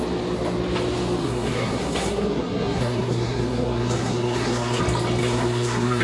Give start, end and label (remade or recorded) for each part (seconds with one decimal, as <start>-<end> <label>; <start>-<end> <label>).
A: 0.0-1.2 recorded; 1.2-4.8 remade; 4.8-5.2 recorded; 5.2-6.0 remade